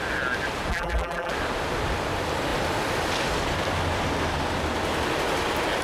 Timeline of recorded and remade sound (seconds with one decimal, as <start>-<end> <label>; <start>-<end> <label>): 0.0-0.7 recorded; 0.7-1.3 remade; 1.3-5.8 recorded